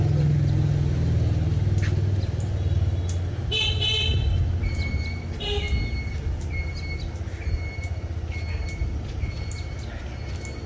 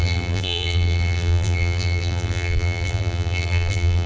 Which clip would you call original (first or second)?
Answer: first